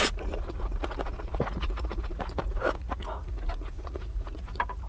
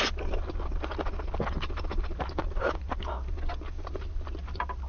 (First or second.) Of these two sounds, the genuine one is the second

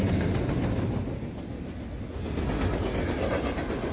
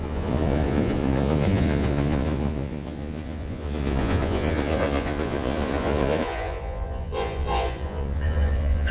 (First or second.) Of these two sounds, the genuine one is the first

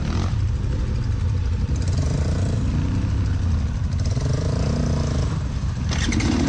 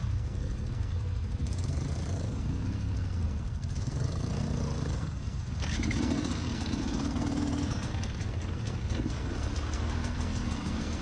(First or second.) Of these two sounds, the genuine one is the first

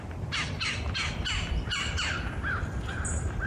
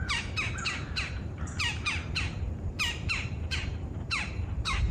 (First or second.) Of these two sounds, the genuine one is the first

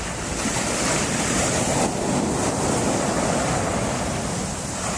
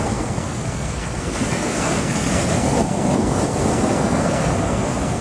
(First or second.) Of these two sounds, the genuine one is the first